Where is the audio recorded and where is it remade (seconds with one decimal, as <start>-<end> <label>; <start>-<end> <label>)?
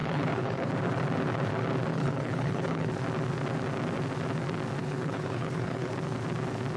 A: 0.0-0.7 remade; 0.7-1.9 recorded; 1.9-2.9 remade; 2.9-4.8 recorded; 4.8-5.9 remade; 5.9-6.8 recorded